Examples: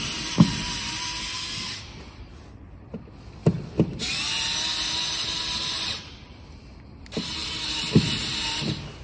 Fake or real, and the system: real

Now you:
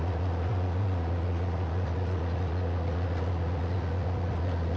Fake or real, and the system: fake, vocoder, Vocos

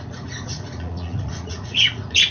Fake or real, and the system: fake, vocoder, Vocos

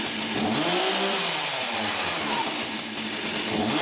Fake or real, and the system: real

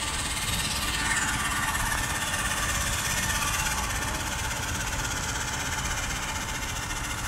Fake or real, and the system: real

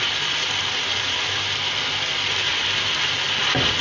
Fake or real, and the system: real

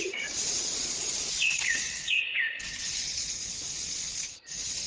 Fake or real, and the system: fake, vocoder, Vocos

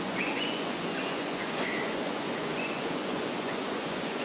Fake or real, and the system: fake, vocoder, Vocos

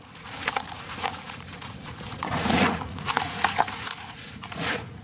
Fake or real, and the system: fake, vocoder, Vocos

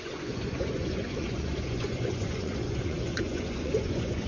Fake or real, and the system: fake, vocoder, Vocos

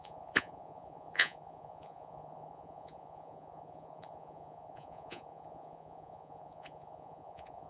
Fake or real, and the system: fake, vocoder, Vocos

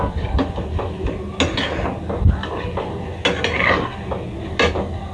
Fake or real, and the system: real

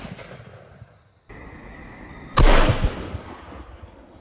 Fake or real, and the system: real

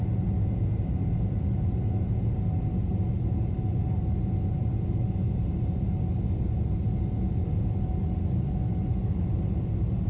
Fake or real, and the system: real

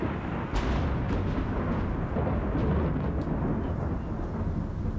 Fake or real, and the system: real